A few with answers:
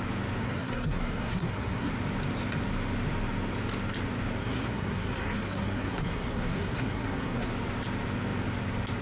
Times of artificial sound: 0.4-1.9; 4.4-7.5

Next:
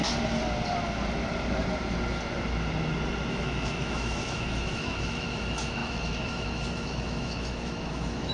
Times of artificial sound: 3.3-8.3

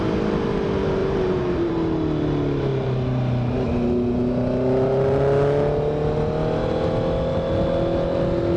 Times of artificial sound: 1.0-1.7; 2.7-3.2

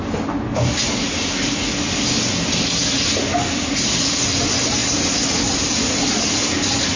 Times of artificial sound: none